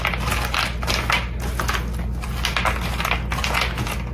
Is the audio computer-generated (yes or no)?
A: no